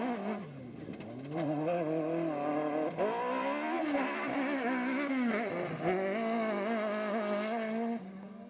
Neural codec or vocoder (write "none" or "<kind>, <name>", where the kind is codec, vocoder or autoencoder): none